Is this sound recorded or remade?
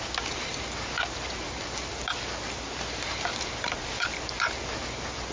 recorded